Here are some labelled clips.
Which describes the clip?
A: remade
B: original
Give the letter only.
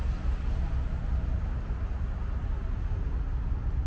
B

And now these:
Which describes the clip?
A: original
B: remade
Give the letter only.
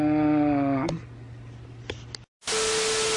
A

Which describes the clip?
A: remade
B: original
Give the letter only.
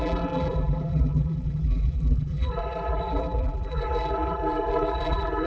A